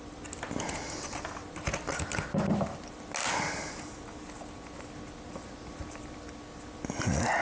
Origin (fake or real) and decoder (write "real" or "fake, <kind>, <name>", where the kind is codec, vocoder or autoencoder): real